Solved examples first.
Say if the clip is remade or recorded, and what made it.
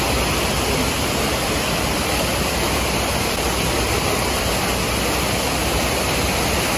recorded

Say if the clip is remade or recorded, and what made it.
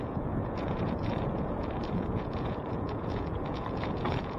remade, vocoder, Vocos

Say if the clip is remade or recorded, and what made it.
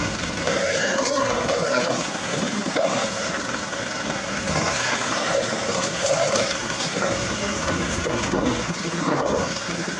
remade, codec, SNAC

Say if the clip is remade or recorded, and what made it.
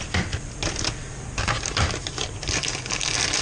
recorded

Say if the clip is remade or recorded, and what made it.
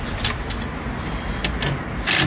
recorded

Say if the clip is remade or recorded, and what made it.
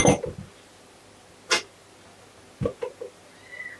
recorded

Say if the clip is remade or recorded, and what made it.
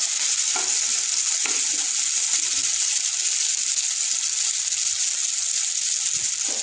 recorded